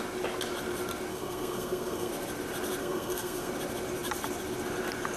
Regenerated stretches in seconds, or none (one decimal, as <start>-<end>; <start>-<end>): 1.1-2.1; 2.8-3.5